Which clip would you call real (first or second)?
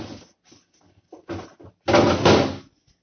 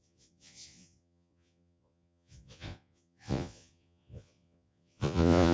first